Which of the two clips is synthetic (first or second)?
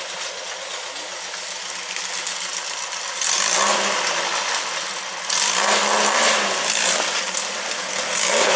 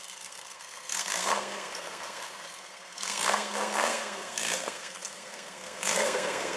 second